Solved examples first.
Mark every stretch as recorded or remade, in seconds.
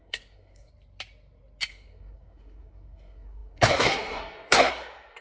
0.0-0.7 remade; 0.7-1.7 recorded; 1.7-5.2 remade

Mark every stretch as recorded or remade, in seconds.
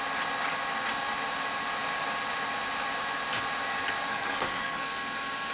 0.0-4.1 recorded; 4.1-4.8 remade; 4.8-5.5 recorded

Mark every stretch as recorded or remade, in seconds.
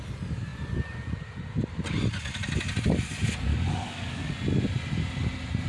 0.0-3.5 recorded; 3.5-4.3 remade; 4.3-5.7 recorded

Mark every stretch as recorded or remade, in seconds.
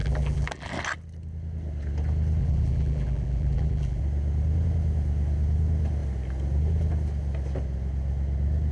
0.0-0.7 remade; 0.7-2.4 recorded; 2.4-4.0 remade; 4.0-8.7 recorded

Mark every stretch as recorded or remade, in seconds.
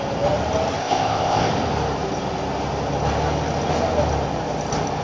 0.0-0.8 recorded; 0.8-1.5 remade; 1.5-5.0 recorded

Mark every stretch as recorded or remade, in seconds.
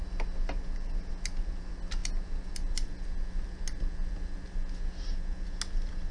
0.0-6.1 recorded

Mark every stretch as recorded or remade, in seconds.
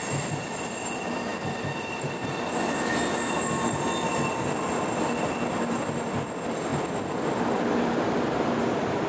0.0-9.1 recorded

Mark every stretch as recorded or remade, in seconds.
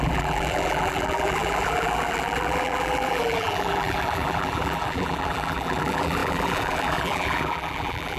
0.0-8.2 remade